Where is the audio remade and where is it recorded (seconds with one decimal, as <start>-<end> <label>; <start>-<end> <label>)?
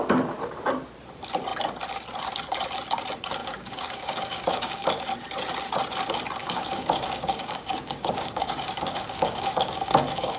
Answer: 0.0-3.4 recorded; 3.4-5.0 remade; 5.0-6.4 recorded; 6.4-10.4 remade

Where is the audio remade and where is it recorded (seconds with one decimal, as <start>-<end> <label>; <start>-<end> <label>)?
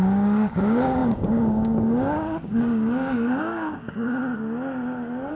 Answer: 0.0-4.2 remade; 4.2-5.3 recorded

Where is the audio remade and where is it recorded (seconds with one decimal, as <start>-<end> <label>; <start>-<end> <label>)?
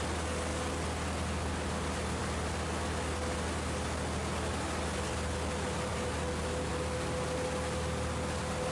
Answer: 0.0-8.7 recorded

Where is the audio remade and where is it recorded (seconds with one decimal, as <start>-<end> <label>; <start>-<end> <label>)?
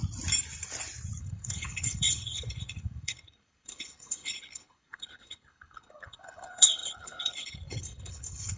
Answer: 0.0-1.2 recorded; 1.2-8.6 remade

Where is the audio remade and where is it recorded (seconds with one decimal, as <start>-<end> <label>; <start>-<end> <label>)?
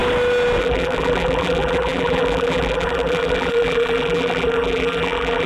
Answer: 0.0-0.6 recorded; 0.6-5.5 remade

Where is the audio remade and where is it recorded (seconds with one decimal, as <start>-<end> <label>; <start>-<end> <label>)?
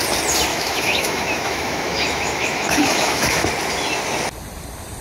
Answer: 0.0-0.5 recorded; 0.5-3.5 remade; 3.5-5.0 recorded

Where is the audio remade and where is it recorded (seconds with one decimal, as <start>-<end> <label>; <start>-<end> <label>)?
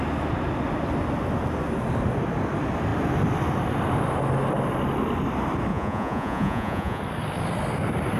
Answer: 0.0-5.7 recorded; 5.7-7.0 remade; 7.0-8.2 recorded